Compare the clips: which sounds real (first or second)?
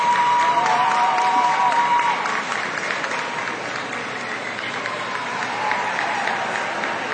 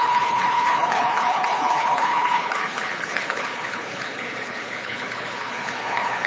first